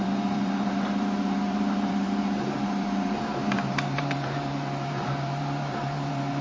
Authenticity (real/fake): fake